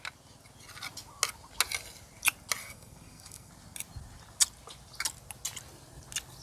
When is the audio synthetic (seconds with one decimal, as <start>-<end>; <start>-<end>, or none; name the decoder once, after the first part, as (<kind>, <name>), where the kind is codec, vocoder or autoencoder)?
2.6-3.5 (codec, SNAC)